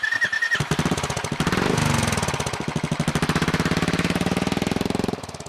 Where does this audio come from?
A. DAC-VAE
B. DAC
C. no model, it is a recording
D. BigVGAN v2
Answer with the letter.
C